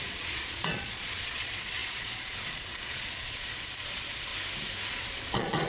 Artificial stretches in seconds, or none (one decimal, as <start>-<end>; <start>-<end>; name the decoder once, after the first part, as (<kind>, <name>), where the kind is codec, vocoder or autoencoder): 0.0-4.3 (vocoder, Vocos); 4.9-5.7